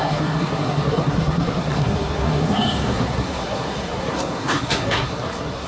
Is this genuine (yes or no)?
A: no